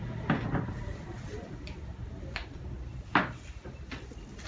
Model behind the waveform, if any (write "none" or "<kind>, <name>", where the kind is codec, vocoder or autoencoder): vocoder, BigVGAN v2